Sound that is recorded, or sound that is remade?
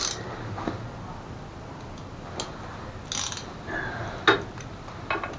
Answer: recorded